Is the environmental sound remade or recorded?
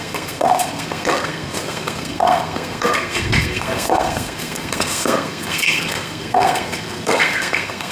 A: remade